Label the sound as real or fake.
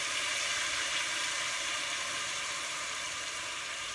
fake